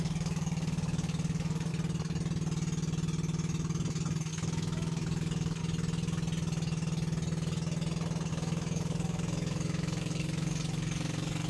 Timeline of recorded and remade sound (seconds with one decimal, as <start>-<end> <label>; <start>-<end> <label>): 0.0-1.7 remade; 1.7-4.3 recorded; 4.3-5.6 remade; 5.6-8.3 recorded; 8.3-11.5 remade